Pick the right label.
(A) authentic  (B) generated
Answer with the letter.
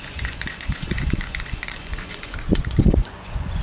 B